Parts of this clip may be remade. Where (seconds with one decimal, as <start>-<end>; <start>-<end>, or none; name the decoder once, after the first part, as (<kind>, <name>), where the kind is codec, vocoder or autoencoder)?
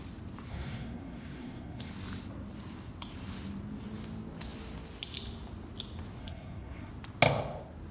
0.5-1.9 (codec, SNAC); 6.2-6.9